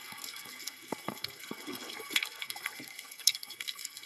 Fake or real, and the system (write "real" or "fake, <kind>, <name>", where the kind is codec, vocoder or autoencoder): fake, codec, SNAC